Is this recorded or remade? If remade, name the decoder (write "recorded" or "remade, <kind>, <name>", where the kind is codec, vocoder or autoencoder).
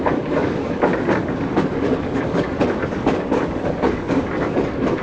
remade, codec, DAC